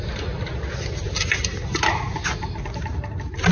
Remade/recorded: recorded